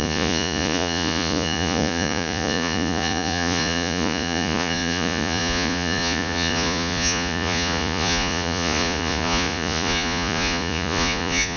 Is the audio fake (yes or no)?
yes